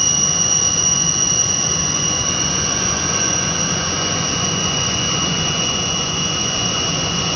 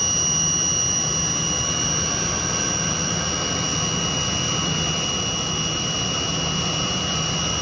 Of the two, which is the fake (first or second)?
first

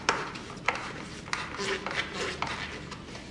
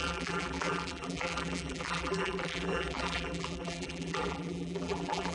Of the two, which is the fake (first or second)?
second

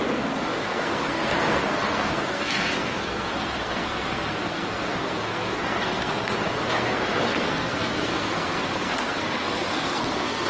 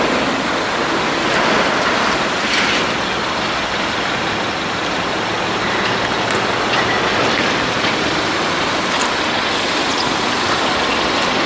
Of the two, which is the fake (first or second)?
first